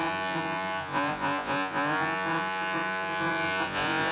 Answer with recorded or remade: remade